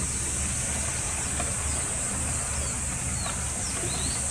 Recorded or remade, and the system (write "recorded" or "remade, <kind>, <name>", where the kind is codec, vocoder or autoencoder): recorded